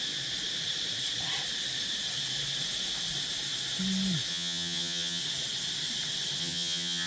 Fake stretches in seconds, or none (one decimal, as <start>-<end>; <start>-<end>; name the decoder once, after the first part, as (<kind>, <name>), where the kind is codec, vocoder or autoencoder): 4.3-5.2 (vocoder, HiFi-GAN); 6.4-7.1